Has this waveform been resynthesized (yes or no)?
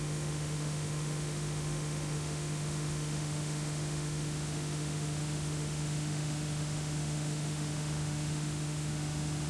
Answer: yes